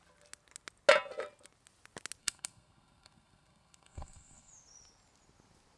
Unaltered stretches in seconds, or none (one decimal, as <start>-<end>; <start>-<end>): 0.0-2.2; 4.5-5.8